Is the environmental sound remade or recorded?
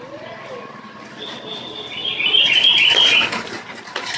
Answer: recorded